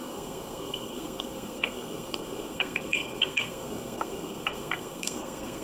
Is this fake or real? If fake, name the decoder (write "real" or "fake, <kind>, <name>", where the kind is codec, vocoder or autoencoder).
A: fake, codec, SNAC